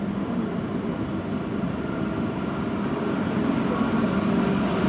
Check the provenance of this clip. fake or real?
real